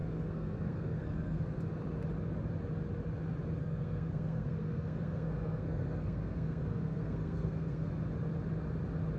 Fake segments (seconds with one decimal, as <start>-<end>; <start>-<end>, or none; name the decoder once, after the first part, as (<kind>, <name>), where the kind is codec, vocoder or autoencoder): 0.0-1.6 (codec, SNAC); 3.6-7.9